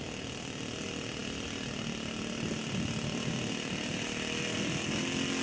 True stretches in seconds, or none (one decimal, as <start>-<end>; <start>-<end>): 0.0-5.4